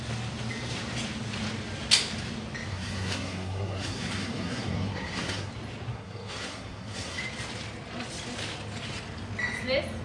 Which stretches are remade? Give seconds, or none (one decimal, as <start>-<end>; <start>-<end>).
2.7-5.5; 5.9-7.2